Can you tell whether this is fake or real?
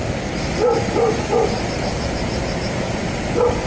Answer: real